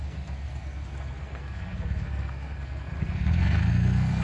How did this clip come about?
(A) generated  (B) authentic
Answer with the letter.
A